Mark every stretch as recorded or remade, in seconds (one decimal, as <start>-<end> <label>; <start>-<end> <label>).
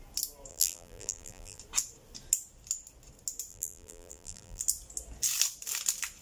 0.0-0.5 recorded; 0.5-1.6 remade; 1.6-3.5 recorded; 3.5-4.6 remade; 4.6-6.2 recorded